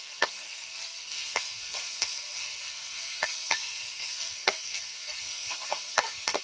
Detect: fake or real fake